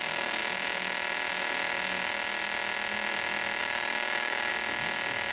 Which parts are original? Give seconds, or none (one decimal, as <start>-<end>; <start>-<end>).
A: 0.4-3.6; 4.5-5.3